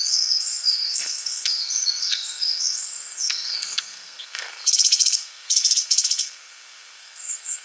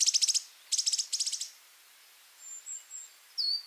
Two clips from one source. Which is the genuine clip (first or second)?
second